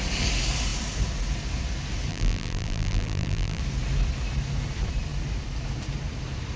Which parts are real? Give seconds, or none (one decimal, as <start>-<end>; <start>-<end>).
0.0-2.1; 3.6-6.6